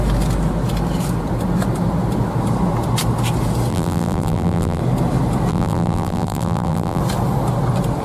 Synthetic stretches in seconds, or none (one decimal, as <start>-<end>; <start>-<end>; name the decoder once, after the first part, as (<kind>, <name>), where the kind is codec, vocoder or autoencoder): 3.7-4.8 (vocoder, BigVGAN v2); 5.5-7.0